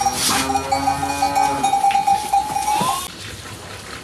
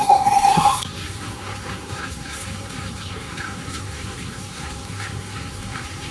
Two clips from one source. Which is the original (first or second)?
first